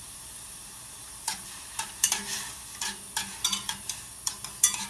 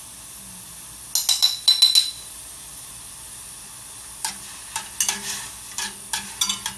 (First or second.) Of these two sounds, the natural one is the second